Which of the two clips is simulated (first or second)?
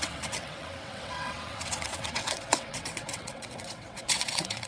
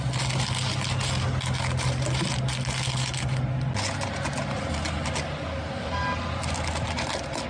first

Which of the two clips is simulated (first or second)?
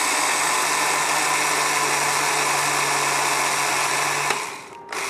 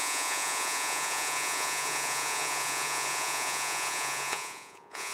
second